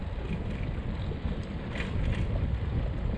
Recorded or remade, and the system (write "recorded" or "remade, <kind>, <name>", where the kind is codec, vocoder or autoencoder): recorded